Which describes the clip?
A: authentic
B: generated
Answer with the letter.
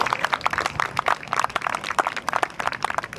B